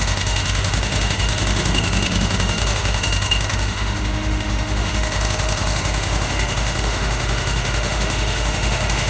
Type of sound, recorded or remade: remade